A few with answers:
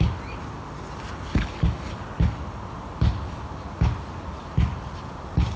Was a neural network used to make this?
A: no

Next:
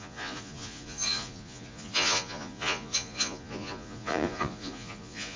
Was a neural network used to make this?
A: yes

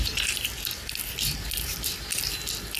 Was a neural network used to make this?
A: no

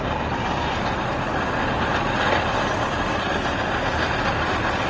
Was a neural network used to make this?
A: no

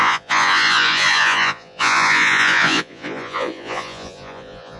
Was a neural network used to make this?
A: yes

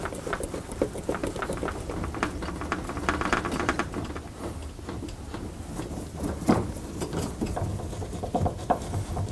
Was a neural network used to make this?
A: no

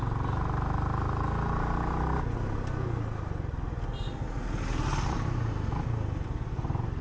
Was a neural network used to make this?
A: no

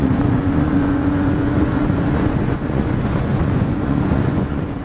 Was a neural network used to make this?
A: yes